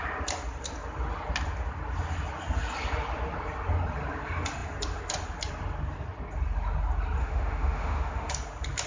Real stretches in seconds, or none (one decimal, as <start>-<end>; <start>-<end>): 0.0-7.2; 8.3-8.9